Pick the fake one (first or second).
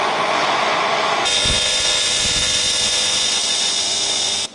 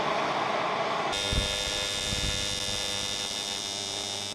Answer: first